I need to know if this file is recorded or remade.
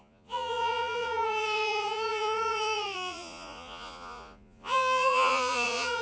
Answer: remade